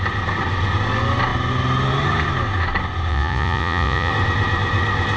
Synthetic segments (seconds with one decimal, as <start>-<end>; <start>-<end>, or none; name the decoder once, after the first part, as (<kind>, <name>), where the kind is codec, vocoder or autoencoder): 3.1-4.1 (vocoder, Vocos)